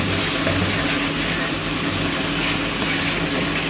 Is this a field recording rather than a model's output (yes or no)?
yes